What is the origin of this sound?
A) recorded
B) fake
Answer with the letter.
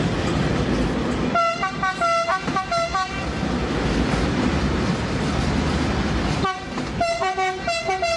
A